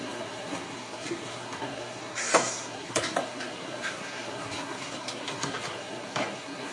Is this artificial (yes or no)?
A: yes